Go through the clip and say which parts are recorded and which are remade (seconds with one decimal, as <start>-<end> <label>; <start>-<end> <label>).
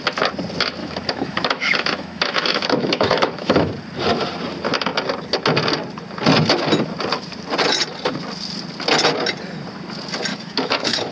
0.0-0.8 recorded; 0.8-3.7 remade; 3.7-10.3 recorded; 10.3-11.1 remade